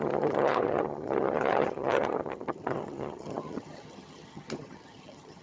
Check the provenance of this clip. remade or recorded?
remade